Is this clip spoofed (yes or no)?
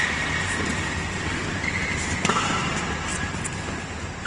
no